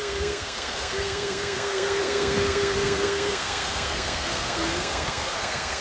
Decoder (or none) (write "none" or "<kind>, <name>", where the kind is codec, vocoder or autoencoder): codec, SNAC